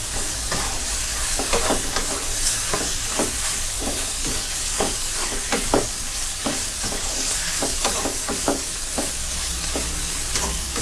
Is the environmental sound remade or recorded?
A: remade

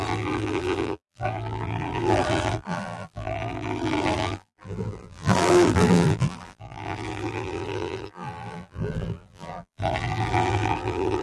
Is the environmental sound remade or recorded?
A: remade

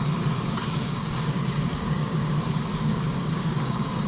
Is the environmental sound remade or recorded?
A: remade